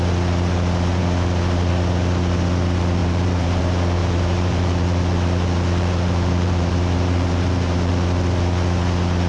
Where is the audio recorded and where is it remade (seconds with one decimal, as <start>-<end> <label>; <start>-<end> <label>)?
0.0-3.0 recorded; 3.0-3.6 remade; 3.6-4.0 recorded; 4.0-7.9 remade; 7.9-9.3 recorded